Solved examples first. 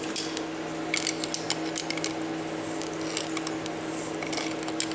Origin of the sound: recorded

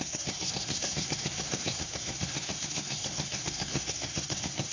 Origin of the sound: remade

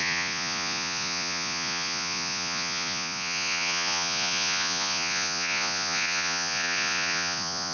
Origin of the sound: remade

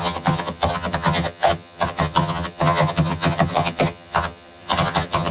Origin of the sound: remade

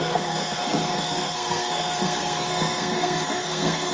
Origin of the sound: remade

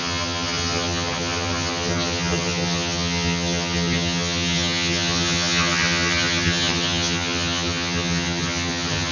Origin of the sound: remade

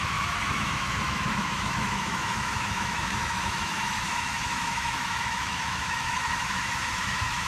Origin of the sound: remade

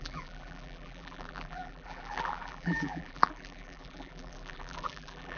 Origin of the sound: remade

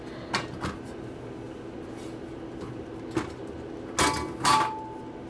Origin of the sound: recorded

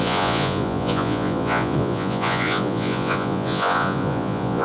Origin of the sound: remade